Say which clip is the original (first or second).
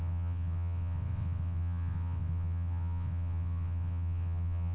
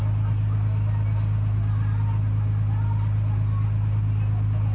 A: second